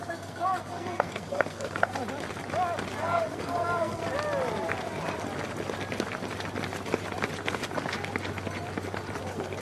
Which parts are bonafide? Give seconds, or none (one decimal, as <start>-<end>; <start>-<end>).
2.0-3.0; 4.0-9.2